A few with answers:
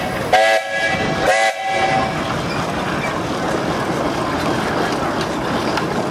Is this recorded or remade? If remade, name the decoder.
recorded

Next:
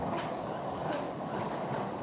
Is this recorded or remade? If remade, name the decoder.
remade, codec, DAC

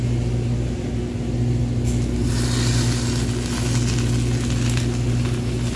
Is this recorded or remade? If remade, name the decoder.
recorded